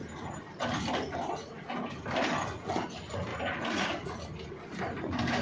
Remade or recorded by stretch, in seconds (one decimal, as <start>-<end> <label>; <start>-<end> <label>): 0.0-5.4 recorded